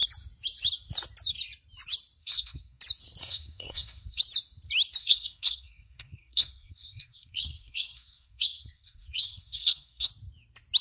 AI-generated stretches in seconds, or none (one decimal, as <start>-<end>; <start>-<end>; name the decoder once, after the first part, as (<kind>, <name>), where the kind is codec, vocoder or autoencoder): 2.2-2.8 (codec, SNAC); 3.2-4.2; 5.0-10.1